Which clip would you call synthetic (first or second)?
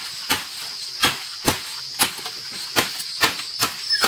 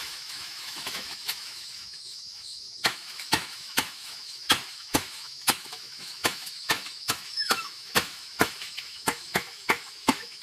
second